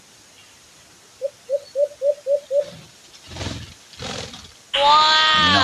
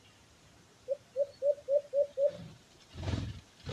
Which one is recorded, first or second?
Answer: first